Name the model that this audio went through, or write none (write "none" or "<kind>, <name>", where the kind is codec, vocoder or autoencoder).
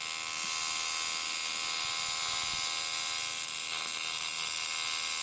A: none